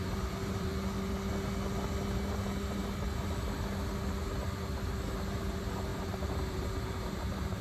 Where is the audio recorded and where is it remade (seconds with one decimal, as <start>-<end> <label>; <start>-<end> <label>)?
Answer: 0.0-0.7 remade; 0.7-5.3 recorded; 5.3-7.6 remade